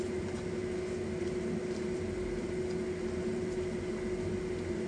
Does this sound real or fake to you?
real